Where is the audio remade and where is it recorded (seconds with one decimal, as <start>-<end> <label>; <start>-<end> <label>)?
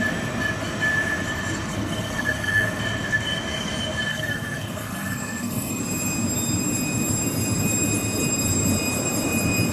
0.0-1.7 recorded; 1.7-2.8 remade; 2.8-4.1 recorded; 4.1-5.8 remade; 5.8-9.7 recorded